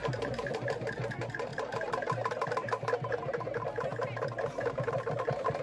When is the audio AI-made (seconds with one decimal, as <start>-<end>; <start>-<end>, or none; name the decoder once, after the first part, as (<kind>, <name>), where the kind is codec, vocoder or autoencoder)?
0.0-0.5 (vocoder, BigVGAN v2)